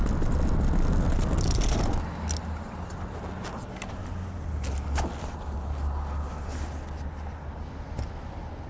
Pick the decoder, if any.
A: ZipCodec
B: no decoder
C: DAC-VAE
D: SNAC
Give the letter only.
B